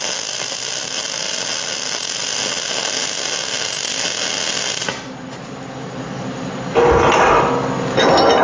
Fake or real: real